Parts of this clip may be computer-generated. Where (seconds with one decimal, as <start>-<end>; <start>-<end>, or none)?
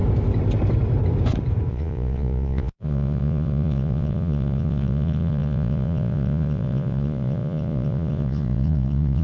1.7-9.2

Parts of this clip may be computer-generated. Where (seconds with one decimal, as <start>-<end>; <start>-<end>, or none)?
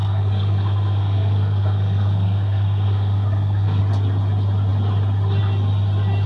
0.0-3.8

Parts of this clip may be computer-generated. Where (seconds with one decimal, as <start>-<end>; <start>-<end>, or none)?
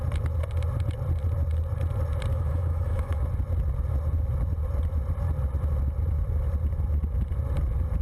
2.3-3.2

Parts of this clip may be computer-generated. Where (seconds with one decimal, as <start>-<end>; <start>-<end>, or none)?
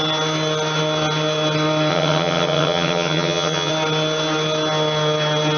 1.9-3.7